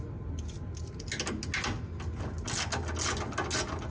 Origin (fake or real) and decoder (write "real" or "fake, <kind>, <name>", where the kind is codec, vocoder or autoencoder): real